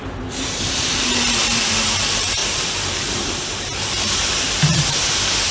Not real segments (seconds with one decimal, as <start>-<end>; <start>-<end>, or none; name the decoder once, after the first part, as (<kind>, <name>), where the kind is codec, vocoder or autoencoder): 0.0-5.5 (vocoder, BigVGAN v2)